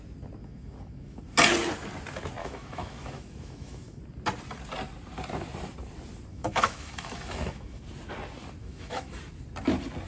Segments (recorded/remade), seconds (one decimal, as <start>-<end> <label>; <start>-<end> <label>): 0.0-0.4 recorded; 0.4-1.2 remade; 1.2-2.4 recorded; 2.4-4.0 remade; 4.0-6.3 recorded; 6.3-7.9 remade; 7.9-8.6 recorded; 8.6-9.1 remade; 9.1-10.1 recorded